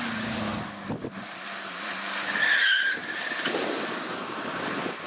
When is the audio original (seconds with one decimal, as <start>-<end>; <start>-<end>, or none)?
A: 0.0-5.1